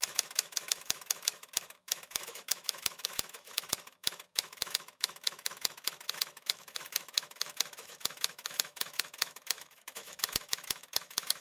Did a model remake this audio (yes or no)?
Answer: yes